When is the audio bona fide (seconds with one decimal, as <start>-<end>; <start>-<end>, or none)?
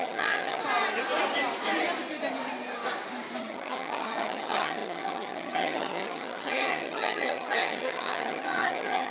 0.6-3.4